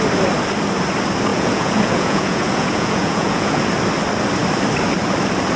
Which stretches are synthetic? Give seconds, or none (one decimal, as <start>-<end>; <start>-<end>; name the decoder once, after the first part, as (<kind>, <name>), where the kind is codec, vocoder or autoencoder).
1.3-3.6 (vocoder, Vocos)